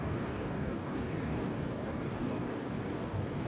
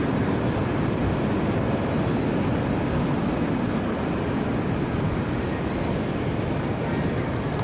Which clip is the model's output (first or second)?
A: first